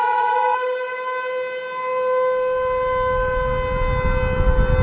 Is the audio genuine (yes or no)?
yes